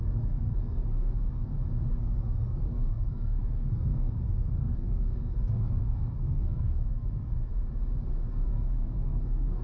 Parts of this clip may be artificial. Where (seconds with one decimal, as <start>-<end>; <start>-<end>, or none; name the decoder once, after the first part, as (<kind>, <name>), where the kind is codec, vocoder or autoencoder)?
0.0-1.5 (codec, SNAC); 2.0-7.5; 8.3-9.6